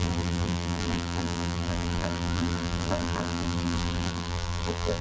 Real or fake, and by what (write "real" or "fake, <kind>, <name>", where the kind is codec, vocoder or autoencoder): fake, vocoder, BigVGAN v2